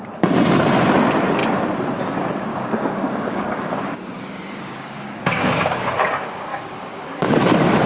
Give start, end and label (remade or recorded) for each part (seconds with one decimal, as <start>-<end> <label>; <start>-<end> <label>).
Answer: 0.0-2.5 recorded; 2.5-5.9 remade; 5.9-6.5 recorded; 6.5-7.3 remade; 7.3-7.9 recorded